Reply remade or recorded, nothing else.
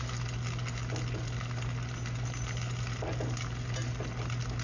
recorded